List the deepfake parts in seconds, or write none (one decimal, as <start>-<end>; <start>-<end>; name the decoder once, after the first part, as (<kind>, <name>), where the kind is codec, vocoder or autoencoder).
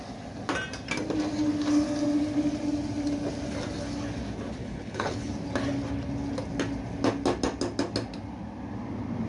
4.6-5.3 (codec, HILCodec)